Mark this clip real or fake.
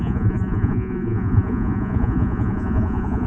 fake